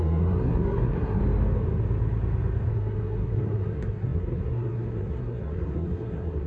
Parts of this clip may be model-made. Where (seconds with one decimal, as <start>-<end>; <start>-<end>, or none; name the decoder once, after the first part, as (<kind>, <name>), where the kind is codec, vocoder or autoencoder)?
0.0-1.2 (codec, SNAC); 2.7-6.5